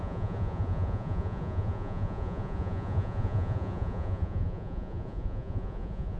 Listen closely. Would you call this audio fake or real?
fake